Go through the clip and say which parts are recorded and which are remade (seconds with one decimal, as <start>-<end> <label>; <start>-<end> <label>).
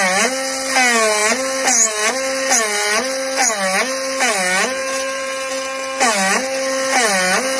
0.0-4.8 recorded; 4.8-5.5 remade; 5.5-7.6 recorded